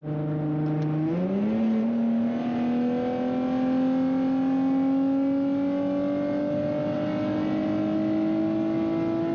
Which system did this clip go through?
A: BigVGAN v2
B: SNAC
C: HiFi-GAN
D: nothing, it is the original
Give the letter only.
D